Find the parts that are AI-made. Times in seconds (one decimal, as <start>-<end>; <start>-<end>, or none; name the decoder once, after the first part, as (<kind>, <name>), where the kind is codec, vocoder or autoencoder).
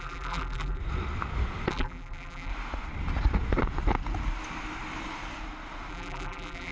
0.0-0.8 (vocoder, BigVGAN v2); 1.7-2.5; 5.9-6.7